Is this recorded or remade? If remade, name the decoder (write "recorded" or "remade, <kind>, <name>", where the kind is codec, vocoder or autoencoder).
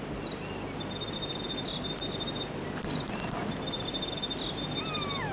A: remade, vocoder, BigVGAN v2